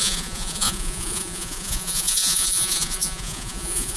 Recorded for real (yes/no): no